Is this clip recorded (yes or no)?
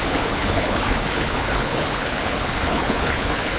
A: no